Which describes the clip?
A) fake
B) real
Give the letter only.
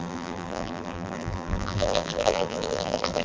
A